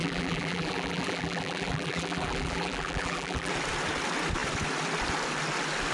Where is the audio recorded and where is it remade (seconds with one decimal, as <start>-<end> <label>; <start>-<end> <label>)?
0.0-3.5 remade; 3.5-5.9 recorded